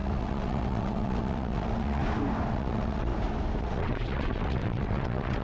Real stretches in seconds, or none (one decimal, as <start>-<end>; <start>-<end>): 2.0-2.5; 3.1-3.6